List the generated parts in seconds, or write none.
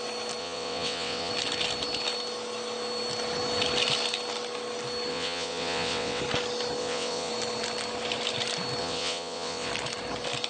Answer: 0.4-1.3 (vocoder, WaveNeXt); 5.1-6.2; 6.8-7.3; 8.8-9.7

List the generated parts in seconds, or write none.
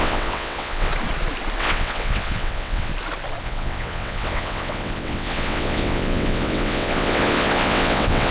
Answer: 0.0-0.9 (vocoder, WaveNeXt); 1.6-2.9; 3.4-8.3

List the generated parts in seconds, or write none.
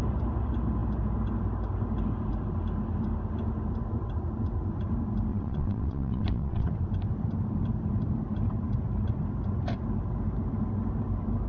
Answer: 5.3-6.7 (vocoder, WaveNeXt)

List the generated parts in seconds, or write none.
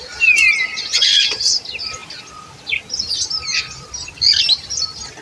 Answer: 0.9-1.5 (vocoder, WaveNeXt)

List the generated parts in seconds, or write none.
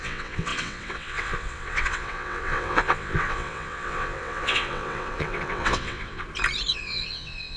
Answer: 0.0-6.2 (vocoder, WaveNeXt); 6.7-7.6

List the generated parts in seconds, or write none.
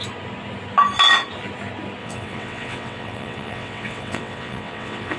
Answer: 2.0-5.2 (vocoder, WaveNeXt)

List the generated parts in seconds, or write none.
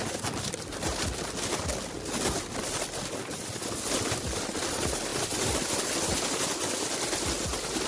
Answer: none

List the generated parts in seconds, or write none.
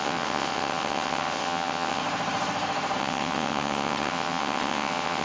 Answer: 0.0-2.0 (vocoder, WaveNeXt); 3.0-5.2